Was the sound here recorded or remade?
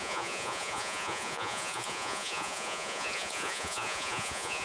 remade